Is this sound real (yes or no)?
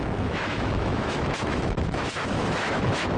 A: no